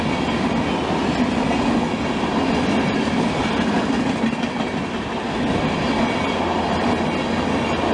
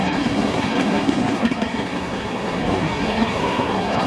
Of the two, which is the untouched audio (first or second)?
first